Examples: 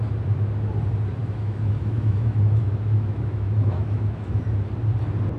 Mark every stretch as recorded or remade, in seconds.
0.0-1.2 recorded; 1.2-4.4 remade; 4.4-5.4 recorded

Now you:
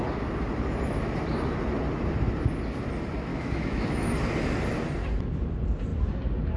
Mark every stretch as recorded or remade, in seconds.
0.0-3.3 recorded; 3.3-4.1 remade; 4.1-6.6 recorded

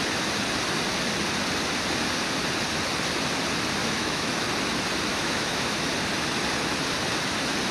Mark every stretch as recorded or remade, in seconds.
0.0-3.8 recorded; 3.8-4.3 remade; 4.3-5.1 recorded; 5.1-5.9 remade; 5.9-7.7 recorded

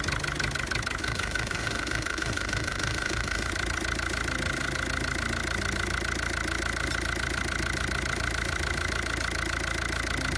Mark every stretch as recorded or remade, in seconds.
0.0-1.0 recorded; 1.0-3.5 remade; 3.5-10.4 recorded

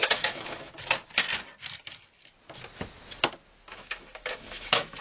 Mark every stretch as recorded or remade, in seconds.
0.0-0.7 remade; 0.7-3.7 recorded; 3.7-5.0 remade

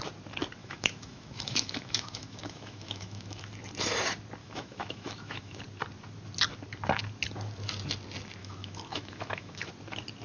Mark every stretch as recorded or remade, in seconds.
0.0-0.6 recorded; 0.6-3.5 remade; 3.5-4.4 recorded; 4.4-5.6 remade; 5.6-8.4 recorded; 8.4-9.7 remade; 9.7-10.2 recorded